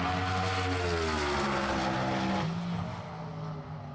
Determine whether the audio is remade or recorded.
recorded